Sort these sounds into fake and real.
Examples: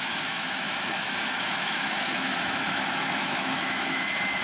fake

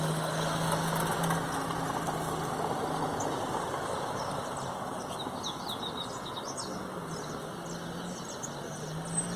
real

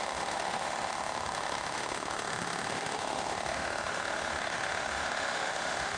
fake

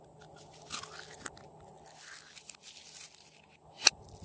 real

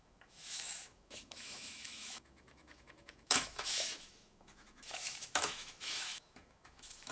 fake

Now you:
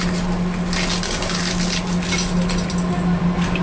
real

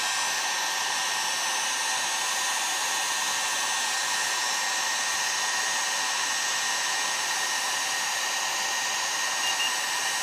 real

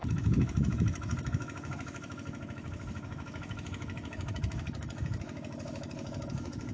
fake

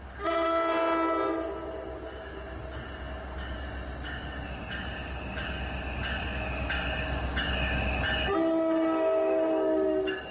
real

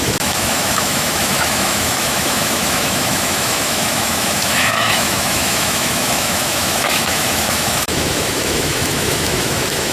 fake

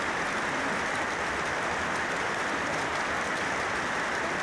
real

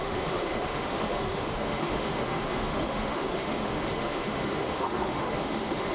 fake